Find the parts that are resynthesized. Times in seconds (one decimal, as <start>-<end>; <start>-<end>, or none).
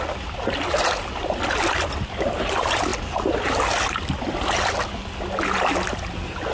none